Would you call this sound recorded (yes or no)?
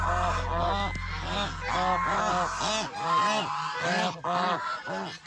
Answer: yes